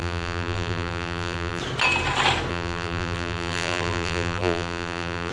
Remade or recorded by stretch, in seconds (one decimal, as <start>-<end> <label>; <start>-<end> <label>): 0.0-1.6 remade; 1.6-2.5 recorded; 2.5-5.3 remade